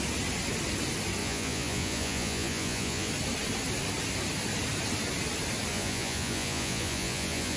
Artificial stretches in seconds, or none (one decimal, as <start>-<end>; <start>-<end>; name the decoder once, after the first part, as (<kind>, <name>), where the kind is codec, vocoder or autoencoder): 1.2-3.1 (vocoder, Vocos); 5.7-7.6